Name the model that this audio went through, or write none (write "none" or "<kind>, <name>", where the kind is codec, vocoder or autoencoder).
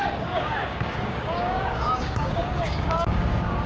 codec, DAC